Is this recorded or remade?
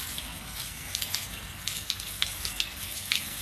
remade